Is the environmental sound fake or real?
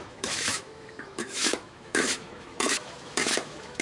fake